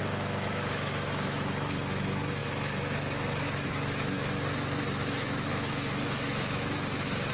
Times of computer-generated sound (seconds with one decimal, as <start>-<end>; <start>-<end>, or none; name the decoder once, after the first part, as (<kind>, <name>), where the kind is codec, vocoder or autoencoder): 0.0-7.3 (autoencoder, DAC-VAE)